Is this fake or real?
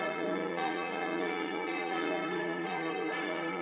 fake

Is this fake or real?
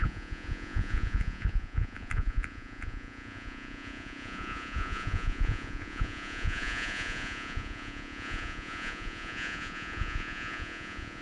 fake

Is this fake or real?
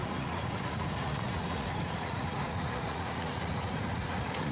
fake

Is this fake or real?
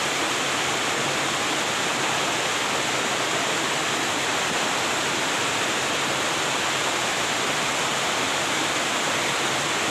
real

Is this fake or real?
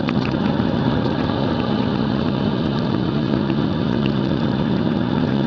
fake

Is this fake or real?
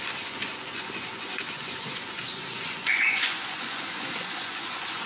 fake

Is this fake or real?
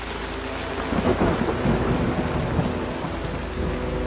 real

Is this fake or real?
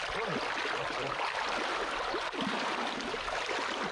real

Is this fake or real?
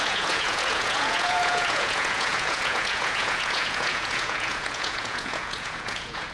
fake